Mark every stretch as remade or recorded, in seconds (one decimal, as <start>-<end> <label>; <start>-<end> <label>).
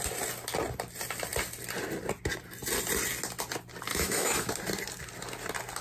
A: 0.0-3.9 recorded; 3.9-4.5 remade; 4.5-5.8 recorded